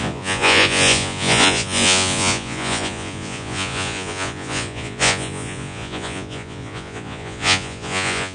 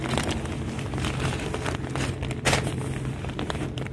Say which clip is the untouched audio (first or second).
second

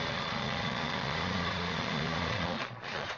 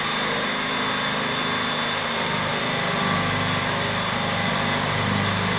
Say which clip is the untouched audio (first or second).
second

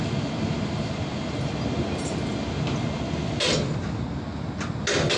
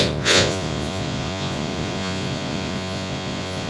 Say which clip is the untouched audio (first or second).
first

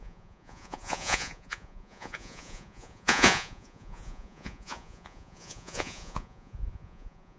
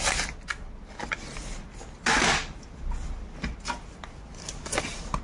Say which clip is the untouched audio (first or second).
second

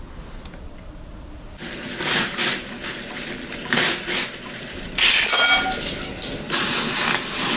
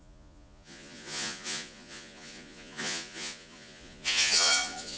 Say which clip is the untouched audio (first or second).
first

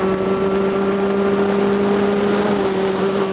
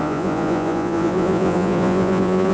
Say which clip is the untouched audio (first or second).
first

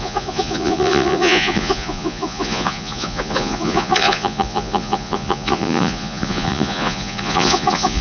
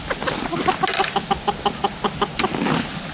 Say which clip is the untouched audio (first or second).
second